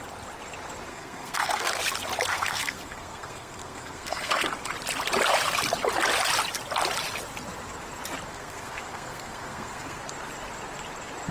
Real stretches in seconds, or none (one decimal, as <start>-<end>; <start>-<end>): 0.0-0.9; 1.8-2.3; 4.5-8.3; 10.0-11.3

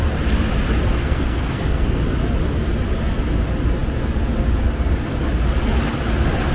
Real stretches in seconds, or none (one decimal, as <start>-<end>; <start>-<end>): 0.0-1.0; 2.0-6.5

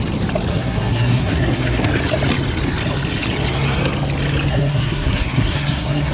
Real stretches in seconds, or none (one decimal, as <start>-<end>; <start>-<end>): 0.0-0.5; 1.9-4.5

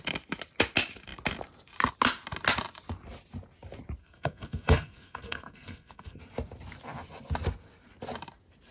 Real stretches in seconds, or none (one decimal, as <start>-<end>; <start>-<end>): 0.0-4.0; 6.2-8.7